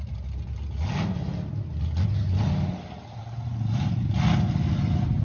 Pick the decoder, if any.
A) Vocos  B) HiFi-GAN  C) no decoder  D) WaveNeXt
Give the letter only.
C